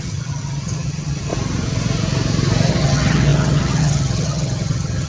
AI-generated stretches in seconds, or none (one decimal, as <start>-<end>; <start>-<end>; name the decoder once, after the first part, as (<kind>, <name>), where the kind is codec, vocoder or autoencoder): 0.0-1.3 (vocoder, HiFi-GAN); 2.7-5.1

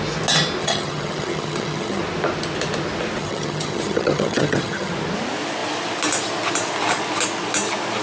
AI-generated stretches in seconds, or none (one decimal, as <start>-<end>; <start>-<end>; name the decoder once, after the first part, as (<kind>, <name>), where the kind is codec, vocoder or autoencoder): 0.6-2.0 (vocoder, HiFi-GAN); 3.2-4.9

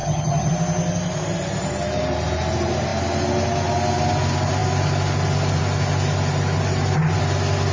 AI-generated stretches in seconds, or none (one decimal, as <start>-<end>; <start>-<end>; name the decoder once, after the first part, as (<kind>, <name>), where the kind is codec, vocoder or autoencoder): 0.0-0.5 (vocoder, HiFi-GAN)

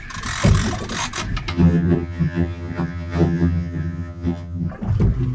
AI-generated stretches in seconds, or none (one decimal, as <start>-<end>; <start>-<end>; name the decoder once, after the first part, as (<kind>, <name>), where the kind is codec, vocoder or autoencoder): 1.5-4.7 (vocoder, HiFi-GAN)

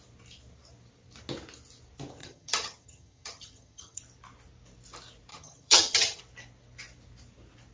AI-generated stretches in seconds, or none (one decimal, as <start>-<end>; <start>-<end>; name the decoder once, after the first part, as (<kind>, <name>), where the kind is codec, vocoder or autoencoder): 2.2-4.0 (vocoder, HiFi-GAN); 5.3-6.2

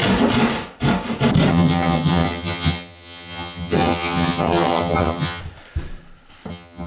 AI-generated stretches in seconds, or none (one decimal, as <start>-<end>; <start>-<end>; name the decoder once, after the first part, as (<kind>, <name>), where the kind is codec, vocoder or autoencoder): 1.5-5.4 (vocoder, HiFi-GAN); 6.5-6.9

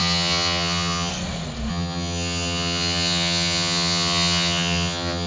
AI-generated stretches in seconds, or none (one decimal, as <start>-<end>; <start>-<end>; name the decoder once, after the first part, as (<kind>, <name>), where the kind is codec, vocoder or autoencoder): 0.0-1.1 (vocoder, HiFi-GAN); 1.7-5.3